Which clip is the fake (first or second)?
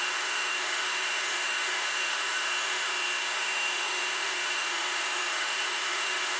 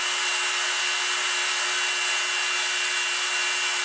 first